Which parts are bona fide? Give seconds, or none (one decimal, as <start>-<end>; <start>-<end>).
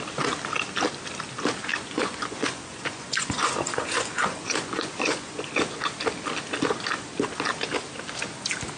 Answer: 0.0-1.7; 5.5-8.8